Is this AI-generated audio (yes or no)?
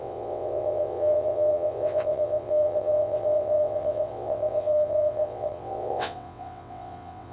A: yes